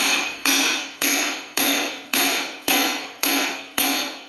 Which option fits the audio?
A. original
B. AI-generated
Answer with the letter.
B